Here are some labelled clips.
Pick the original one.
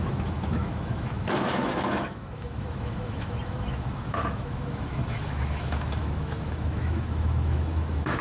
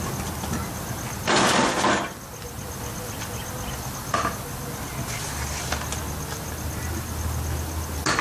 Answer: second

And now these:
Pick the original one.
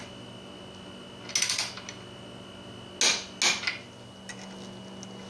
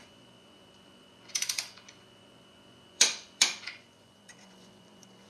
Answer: first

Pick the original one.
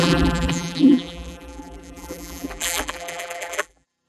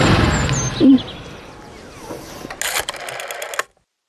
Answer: second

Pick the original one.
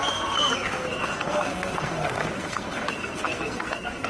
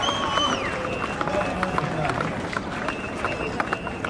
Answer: second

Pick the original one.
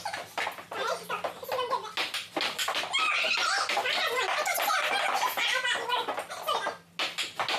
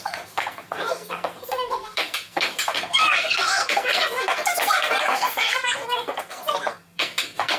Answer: first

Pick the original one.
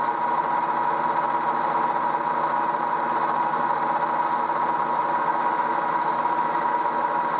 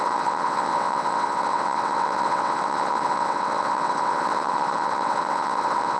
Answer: first